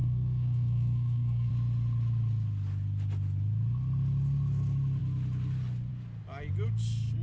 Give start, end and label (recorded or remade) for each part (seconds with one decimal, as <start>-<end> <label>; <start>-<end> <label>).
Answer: 0.0-1.5 remade; 1.5-7.2 recorded